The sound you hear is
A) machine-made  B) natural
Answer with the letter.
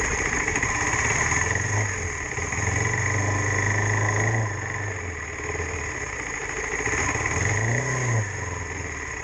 B